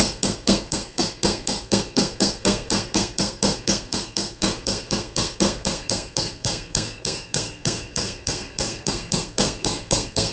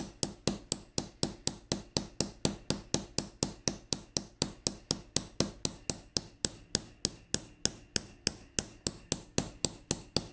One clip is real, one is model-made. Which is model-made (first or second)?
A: first